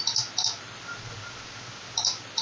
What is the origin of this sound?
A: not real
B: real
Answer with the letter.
B